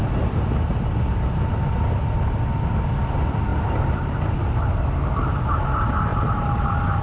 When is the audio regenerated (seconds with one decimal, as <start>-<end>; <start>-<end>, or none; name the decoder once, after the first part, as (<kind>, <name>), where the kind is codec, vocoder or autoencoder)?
3.5-4.7 (vocoder, BigVGAN v2); 6.1-7.0